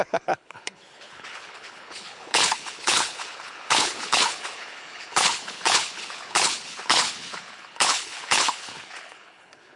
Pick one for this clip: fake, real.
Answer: fake